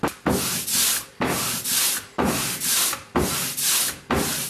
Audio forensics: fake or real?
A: real